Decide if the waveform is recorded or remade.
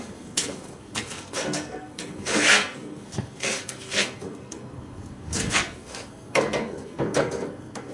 remade